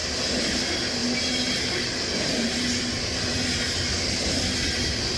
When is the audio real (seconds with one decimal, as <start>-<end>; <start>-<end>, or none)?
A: 0.0-5.2